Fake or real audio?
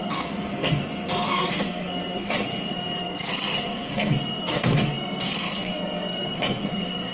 fake